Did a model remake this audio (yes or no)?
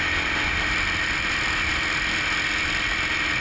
no